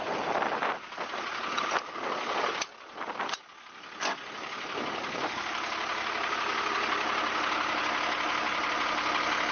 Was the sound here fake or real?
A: real